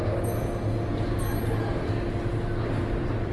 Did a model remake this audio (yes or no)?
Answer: no